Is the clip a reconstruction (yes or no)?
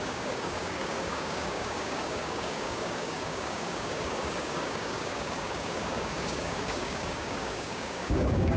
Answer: yes